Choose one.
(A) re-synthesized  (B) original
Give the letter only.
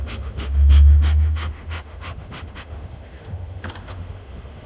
A